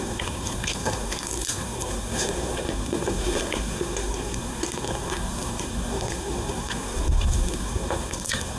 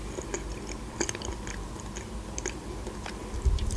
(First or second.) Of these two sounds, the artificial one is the first